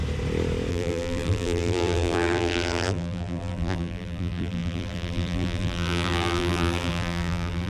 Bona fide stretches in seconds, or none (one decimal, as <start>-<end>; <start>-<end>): 0.0-0.7